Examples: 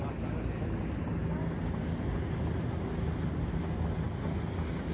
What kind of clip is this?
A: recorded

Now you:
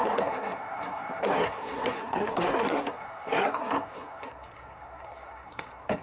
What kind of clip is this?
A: remade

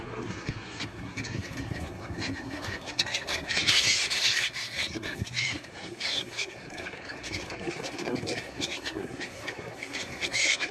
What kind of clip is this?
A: remade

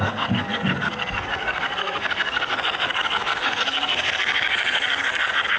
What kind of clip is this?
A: remade